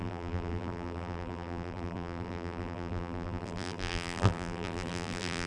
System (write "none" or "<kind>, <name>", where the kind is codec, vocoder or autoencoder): vocoder, BigVGAN v2